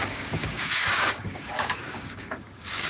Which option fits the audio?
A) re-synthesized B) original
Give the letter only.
A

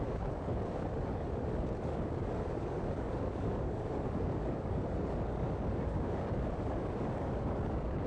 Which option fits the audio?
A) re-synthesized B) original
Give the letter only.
A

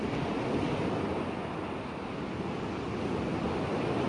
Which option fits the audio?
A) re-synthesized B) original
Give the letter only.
B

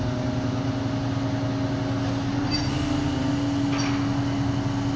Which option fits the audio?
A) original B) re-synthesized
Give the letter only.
A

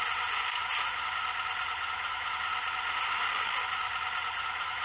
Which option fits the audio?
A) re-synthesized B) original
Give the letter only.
B